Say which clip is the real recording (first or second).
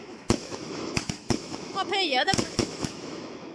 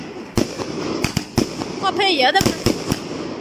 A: second